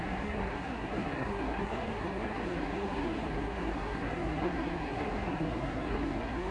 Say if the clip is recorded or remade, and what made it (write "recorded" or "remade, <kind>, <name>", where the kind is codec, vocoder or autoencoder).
remade, codec, SNAC